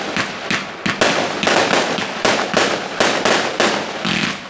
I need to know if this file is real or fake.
real